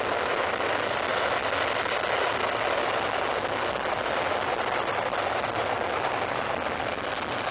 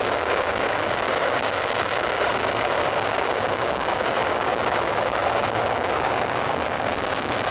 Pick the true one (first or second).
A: first